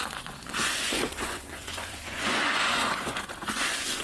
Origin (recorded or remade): remade